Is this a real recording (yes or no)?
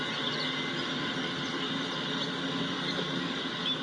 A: yes